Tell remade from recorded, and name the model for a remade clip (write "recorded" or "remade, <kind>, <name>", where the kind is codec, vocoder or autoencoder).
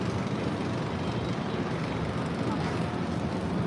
recorded